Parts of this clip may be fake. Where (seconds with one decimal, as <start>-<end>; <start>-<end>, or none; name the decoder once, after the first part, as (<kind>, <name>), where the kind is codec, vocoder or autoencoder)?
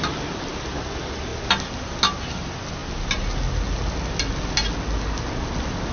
none